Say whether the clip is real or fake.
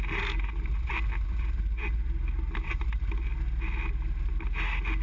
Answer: real